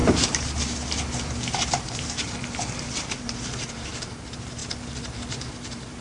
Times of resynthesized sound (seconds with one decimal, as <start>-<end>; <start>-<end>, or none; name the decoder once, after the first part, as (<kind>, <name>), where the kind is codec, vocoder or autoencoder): 0.0-4.6 (vocoder, BigVGAN v2); 5.5-6.0